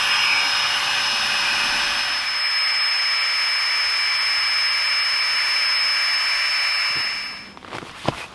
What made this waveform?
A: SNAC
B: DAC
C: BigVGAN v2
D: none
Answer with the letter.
D